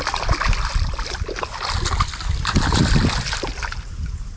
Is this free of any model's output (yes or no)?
yes